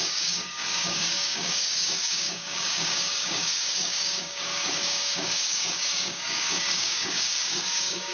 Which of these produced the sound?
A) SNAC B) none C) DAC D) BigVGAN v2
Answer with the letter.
C